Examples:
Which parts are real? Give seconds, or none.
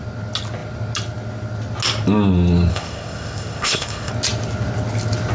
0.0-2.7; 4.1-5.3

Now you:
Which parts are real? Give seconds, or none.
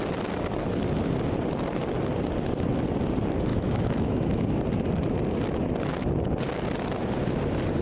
0.0-3.5; 4.6-7.8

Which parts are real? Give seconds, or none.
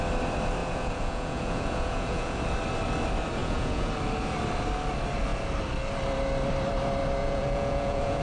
0.0-0.6; 2.4-3.4; 3.9-7.2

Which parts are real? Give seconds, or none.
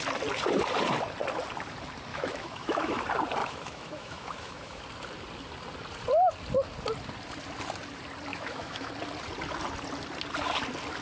0.0-2.1; 3.0-3.4; 4.8-8.3; 8.9-11.0